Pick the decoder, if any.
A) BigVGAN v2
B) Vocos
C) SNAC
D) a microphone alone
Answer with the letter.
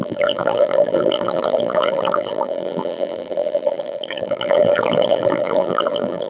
A